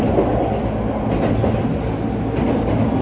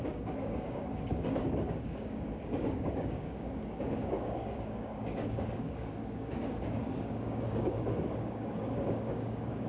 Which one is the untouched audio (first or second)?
first